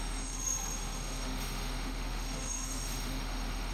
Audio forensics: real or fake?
fake